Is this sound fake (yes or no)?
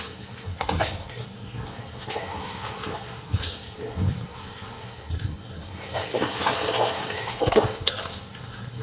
yes